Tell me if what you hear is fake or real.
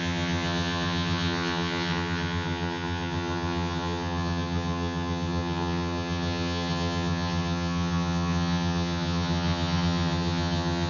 fake